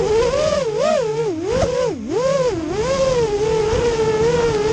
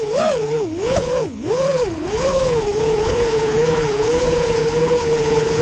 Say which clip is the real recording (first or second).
first